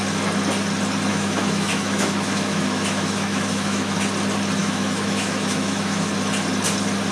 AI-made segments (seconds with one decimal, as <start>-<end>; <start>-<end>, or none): 1.1-4.0; 4.6-6.1